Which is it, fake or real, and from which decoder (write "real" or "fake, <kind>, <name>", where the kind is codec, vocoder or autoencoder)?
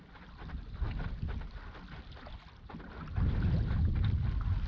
real